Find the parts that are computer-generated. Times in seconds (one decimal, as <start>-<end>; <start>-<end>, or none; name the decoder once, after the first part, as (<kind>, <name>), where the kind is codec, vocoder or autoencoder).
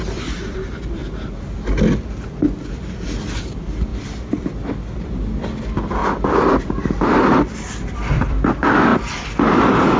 0.0-1.0 (vocoder, BigVGAN v2); 3.4-10.0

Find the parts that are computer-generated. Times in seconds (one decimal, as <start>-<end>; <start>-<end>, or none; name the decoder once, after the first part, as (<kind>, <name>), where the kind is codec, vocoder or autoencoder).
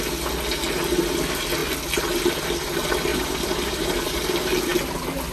3.1-4.2 (vocoder, BigVGAN v2)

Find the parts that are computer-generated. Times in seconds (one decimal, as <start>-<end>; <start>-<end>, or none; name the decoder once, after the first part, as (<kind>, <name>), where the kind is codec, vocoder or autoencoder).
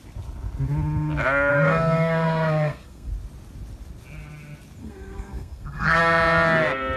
1.5-3.1 (codec, SNAC); 4.8-6.0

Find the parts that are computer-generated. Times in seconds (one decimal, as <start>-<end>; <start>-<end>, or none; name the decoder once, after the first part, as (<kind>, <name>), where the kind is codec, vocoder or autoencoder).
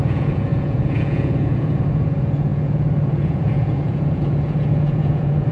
0.0-5.5 (vocoder, Vocos)